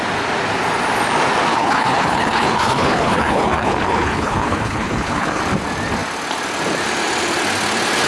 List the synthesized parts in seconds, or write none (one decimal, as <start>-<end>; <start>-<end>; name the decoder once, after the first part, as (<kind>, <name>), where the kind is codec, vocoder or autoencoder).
1.5-5.4 (codec, HILCodec)